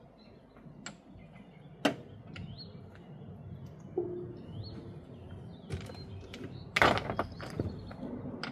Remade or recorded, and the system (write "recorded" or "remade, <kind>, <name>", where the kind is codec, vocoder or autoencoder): recorded